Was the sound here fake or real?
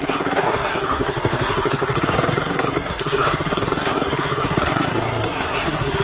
fake